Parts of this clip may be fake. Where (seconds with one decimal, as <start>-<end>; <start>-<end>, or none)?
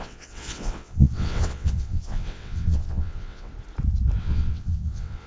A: 0.0-3.5; 4.2-5.3